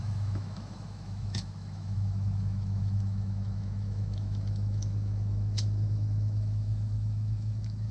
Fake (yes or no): yes